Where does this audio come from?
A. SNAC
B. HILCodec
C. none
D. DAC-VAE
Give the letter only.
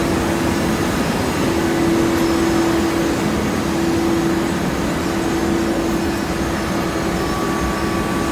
C